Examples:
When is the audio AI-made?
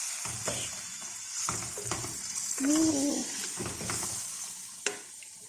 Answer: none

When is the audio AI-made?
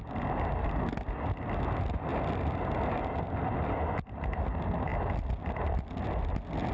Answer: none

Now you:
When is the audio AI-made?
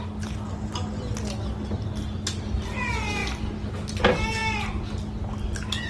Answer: none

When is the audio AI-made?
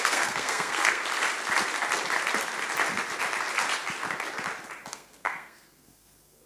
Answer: 0.0-1.0 (codec, SNAC); 4.9-6.5